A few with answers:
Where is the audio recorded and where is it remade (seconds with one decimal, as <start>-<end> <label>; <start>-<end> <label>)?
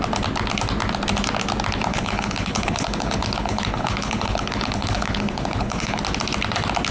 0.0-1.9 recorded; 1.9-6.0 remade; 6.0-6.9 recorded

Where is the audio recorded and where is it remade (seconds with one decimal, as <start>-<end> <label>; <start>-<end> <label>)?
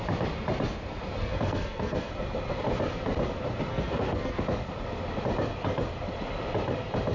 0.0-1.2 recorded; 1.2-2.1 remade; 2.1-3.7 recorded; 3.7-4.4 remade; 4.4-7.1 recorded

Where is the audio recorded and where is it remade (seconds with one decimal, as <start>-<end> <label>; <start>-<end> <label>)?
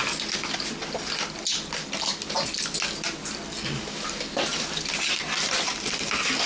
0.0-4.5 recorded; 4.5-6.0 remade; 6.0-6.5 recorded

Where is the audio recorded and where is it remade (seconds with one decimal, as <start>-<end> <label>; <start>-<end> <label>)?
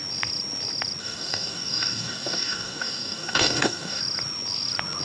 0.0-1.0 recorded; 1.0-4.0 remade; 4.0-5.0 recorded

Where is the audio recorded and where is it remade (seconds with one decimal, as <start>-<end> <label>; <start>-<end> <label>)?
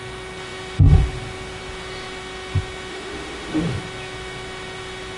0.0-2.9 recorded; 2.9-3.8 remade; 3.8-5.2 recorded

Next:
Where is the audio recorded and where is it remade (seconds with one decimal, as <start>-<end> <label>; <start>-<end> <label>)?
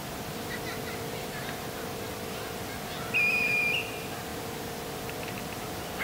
0.0-6.0 recorded